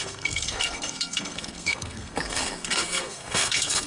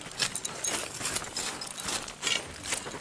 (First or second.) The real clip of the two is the second